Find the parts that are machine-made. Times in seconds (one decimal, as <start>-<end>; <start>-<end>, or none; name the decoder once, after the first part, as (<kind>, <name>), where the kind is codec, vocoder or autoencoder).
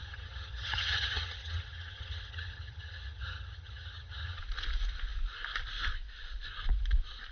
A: 0.0-4.4 (vocoder, HiFi-GAN)